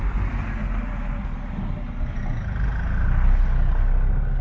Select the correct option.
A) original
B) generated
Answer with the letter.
A